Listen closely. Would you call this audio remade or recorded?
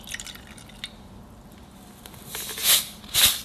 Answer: recorded